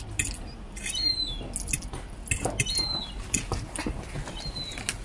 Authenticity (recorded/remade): recorded